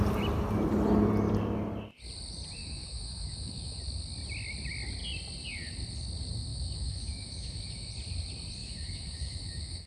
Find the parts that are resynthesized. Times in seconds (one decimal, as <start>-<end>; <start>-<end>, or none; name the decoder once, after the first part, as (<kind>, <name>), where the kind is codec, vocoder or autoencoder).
2.6-3.8 (autoencoder, DAC-VAE); 6.5-7.9; 8.6-9.9